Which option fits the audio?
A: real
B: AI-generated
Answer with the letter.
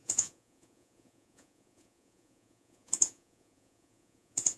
B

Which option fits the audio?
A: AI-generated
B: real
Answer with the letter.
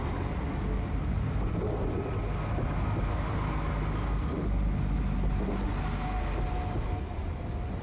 B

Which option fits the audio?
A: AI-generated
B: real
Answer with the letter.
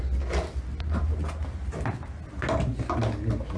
B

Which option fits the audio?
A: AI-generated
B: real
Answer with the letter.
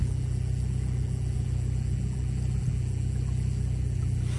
B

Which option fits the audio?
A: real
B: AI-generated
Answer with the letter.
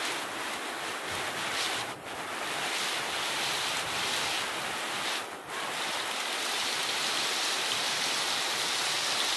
A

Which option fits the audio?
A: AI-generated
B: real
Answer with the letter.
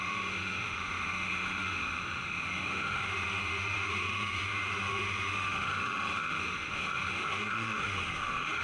A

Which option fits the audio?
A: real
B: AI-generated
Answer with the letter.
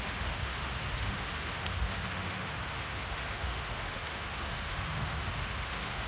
B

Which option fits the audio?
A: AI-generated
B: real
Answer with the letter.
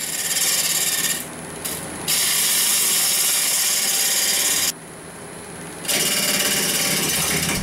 B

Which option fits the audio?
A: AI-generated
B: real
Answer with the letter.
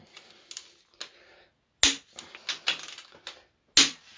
B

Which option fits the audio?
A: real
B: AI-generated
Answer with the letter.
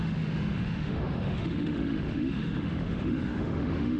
B